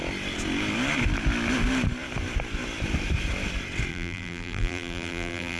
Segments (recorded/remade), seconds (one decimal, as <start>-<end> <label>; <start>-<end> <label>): 0.0-3.9 recorded; 3.9-5.6 remade